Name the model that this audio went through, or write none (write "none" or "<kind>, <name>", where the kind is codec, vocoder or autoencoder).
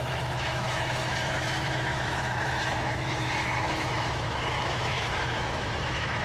autoencoder, DAC-VAE